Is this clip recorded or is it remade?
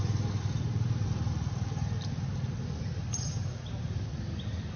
recorded